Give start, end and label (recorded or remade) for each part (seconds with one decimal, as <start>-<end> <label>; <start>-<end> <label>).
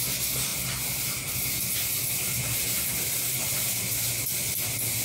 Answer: 0.0-0.5 recorded; 0.5-3.5 remade; 3.5-5.0 recorded